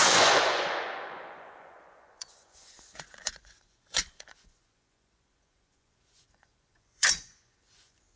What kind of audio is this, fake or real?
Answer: fake